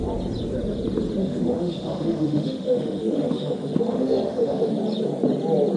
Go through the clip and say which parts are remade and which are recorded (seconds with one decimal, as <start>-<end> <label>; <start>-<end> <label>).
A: 0.0-1.2 recorded; 1.2-4.7 remade; 4.7-5.8 recorded